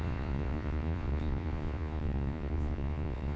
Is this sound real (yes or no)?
no